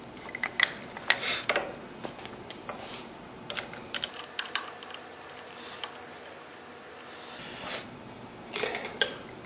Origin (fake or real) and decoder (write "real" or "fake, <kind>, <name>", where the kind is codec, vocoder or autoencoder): real